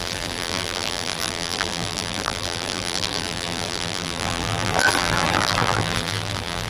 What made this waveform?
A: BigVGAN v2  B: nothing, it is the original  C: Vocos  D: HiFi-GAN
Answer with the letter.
A